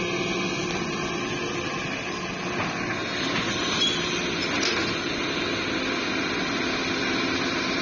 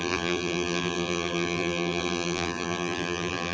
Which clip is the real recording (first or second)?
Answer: first